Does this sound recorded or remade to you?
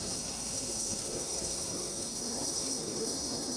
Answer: remade